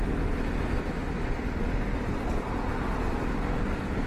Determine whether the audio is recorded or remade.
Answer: recorded